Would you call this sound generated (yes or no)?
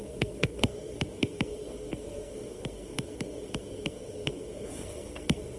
yes